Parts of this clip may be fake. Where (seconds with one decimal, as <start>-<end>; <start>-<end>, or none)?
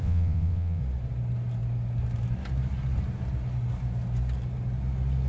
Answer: 0.0-0.8